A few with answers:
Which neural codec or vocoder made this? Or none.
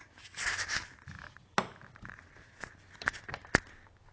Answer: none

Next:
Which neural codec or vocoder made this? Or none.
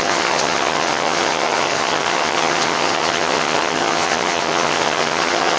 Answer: vocoder, HiFi-GAN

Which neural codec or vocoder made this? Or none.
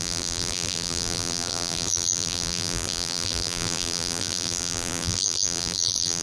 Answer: vocoder, BigVGAN v2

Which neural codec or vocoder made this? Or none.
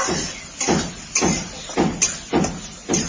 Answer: none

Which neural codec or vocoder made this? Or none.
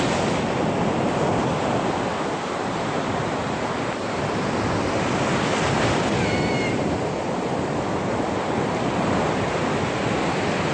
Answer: none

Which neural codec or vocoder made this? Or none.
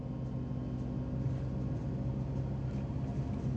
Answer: none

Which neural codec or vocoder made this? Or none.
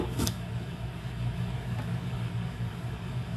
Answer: codec, DAC